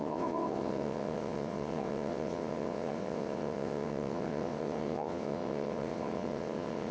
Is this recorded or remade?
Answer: remade